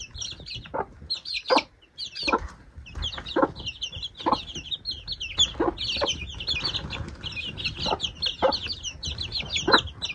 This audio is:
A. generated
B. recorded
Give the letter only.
B